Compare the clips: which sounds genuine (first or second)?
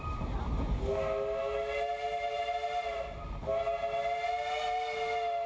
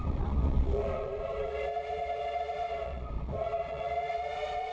first